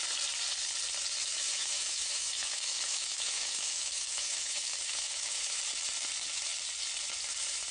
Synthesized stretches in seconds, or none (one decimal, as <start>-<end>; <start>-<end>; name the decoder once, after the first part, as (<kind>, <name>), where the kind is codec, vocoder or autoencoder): 1.2-5.6 (autoencoder, DAC-VAE)